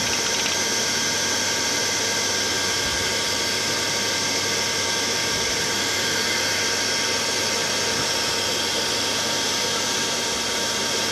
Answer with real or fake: fake